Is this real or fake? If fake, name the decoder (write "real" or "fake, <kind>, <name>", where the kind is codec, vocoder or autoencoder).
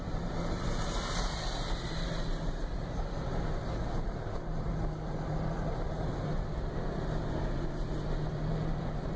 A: fake, vocoder, BigVGAN v2